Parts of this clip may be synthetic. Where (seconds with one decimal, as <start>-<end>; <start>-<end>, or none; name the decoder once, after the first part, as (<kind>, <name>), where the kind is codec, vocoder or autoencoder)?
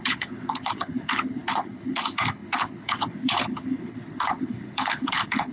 0.0-5.5 (codec, HILCodec)